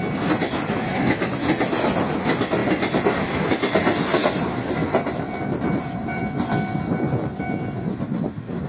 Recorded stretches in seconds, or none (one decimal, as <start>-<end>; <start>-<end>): 0.0-2.6; 6.2-7.3; 8.0-8.7